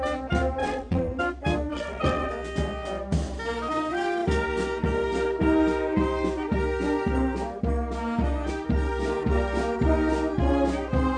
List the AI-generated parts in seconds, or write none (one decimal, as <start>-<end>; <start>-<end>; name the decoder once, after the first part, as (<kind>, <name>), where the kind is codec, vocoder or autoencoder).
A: 0.6-1.2 (vocoder, WaveNeXt); 1.7-2.3